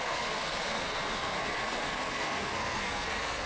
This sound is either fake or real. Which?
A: fake